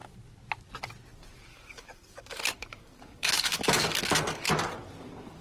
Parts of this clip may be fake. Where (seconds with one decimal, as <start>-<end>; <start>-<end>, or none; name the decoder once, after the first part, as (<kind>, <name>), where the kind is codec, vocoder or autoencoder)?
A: 1.5-4.5 (codec, DAC)